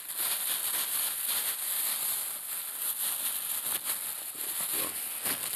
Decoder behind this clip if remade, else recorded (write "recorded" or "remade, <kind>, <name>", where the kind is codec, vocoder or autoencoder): recorded